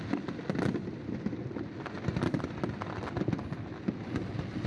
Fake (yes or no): no